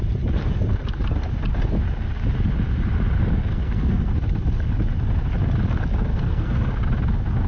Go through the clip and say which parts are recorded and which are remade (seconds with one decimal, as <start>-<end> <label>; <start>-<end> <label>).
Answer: 0.0-3.5 recorded; 3.5-4.1 remade; 4.1-6.1 recorded; 6.1-6.7 remade; 6.7-7.5 recorded